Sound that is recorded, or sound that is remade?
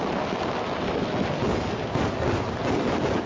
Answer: recorded